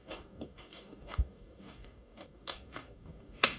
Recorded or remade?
remade